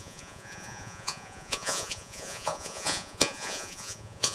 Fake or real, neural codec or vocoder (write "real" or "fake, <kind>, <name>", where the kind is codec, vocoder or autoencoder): fake, vocoder, Vocos